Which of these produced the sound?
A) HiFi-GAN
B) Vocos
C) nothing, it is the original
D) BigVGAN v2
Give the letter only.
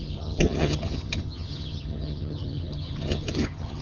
A